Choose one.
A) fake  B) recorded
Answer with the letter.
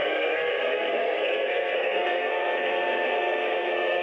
A